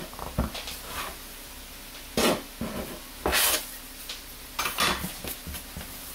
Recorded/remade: recorded